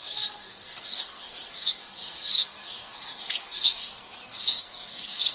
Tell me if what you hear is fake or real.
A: fake